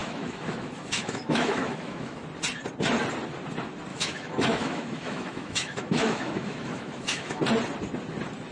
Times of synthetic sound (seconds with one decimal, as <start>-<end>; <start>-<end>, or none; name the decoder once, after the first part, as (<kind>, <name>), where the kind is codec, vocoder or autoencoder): 0.0-2.2 (autoencoder, DAC-VAE); 3.9-7.4